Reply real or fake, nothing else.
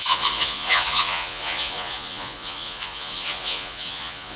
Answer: fake